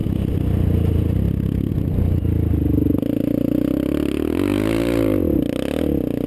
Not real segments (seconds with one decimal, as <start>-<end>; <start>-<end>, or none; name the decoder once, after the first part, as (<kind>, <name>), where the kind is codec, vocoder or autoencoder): none